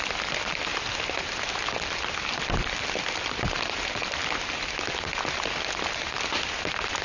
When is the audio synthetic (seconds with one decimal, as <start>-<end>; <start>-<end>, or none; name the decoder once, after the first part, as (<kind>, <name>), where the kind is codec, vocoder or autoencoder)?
0.7-3.4 (vocoder, BigVGAN v2); 4.2-4.9